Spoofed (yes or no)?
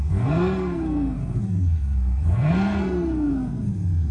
yes